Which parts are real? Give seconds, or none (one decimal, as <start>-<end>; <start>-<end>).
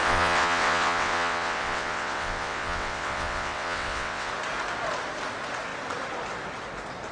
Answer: 4.3-7.1